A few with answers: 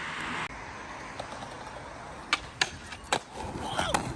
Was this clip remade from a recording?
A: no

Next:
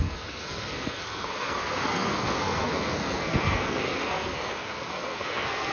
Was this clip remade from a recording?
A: yes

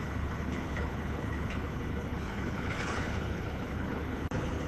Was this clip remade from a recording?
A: yes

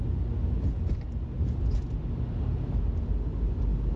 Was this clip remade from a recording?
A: no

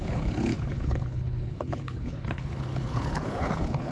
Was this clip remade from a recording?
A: yes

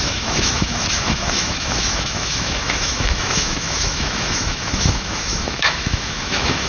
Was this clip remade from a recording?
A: yes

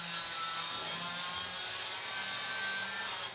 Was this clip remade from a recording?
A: no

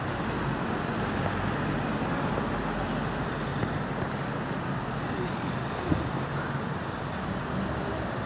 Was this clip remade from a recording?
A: no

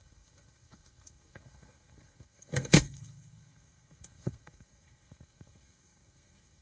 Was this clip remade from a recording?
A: yes